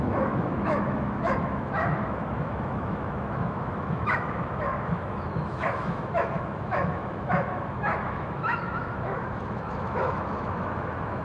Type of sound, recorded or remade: remade